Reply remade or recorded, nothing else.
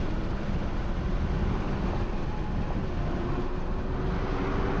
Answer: recorded